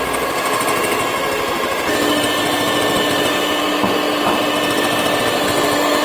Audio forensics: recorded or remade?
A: recorded